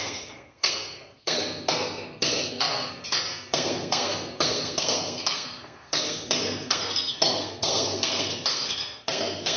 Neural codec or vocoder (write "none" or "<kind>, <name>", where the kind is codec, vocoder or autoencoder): codec, SNAC